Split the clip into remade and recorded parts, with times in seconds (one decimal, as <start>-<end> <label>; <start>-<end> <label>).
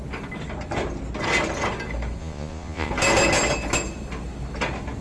0.0-2.2 recorded; 2.2-2.9 remade; 2.9-5.0 recorded